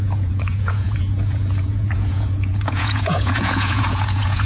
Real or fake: fake